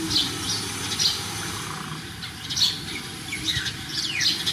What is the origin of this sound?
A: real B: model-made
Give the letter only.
A